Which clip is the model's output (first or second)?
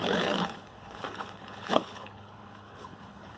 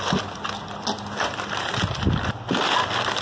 first